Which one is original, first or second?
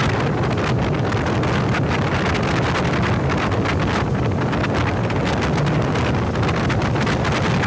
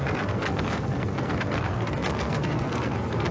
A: first